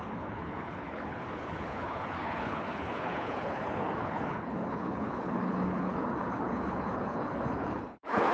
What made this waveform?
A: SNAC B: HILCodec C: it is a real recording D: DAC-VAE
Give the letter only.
B